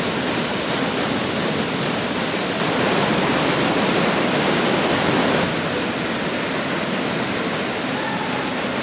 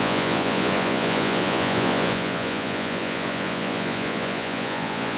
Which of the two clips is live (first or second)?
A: first